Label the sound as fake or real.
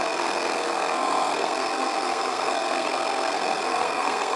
fake